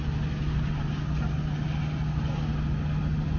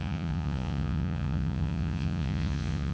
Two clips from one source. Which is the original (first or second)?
first